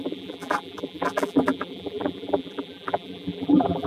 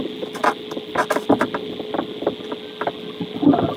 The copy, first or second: first